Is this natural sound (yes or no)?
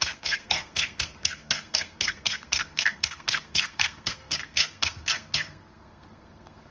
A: no